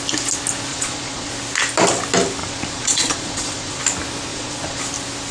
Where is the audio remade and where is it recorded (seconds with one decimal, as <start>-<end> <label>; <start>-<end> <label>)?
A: 0.0-0.7 recorded; 0.7-1.3 remade; 1.3-2.4 recorded; 2.4-3.8 remade; 3.8-4.3 recorded; 4.3-4.8 remade; 4.8-5.3 recorded